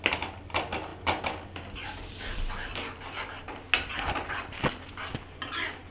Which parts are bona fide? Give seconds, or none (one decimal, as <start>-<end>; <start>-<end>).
0.0-5.9